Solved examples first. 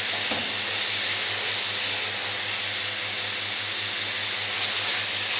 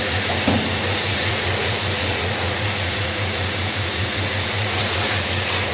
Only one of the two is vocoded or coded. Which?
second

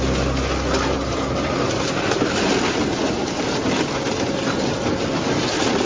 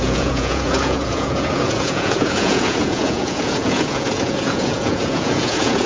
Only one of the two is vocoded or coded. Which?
second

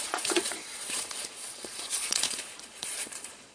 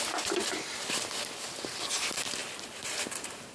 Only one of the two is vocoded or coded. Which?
first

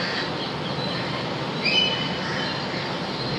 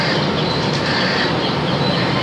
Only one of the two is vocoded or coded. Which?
second